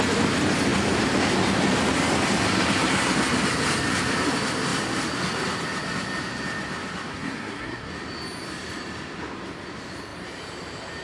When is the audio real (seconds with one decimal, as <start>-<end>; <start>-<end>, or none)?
0.0-7.1; 7.9-11.0